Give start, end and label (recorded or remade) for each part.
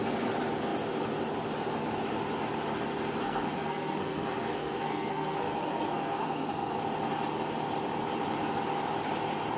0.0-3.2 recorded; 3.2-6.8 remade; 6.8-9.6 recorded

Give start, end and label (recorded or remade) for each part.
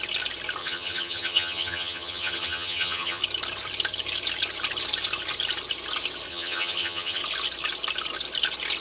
0.0-0.6 recorded; 0.6-3.2 remade; 3.2-6.3 recorded; 6.3-7.2 remade; 7.2-8.8 recorded